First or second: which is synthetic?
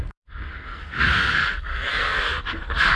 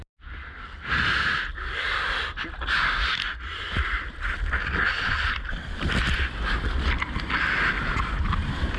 first